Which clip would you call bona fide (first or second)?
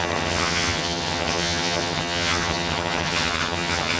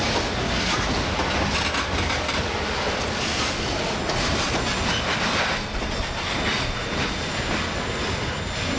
second